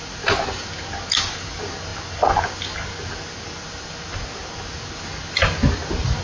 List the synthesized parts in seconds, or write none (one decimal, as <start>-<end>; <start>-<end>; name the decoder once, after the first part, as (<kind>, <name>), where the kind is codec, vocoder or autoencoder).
none